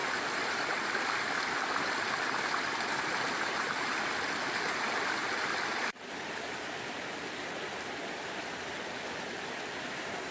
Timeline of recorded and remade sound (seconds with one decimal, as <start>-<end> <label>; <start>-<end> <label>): 0.0-5.2 remade; 5.2-8.9 recorded; 8.9-10.3 remade